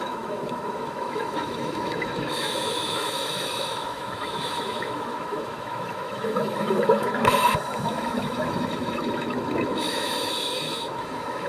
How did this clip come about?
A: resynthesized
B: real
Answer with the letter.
A